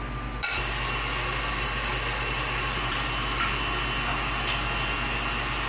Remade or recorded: recorded